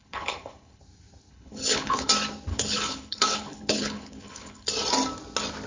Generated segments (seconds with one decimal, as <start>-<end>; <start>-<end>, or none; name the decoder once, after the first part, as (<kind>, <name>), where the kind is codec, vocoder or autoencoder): 0.0-0.8 (codec, HILCodec); 1.3-2.1; 2.5-4.7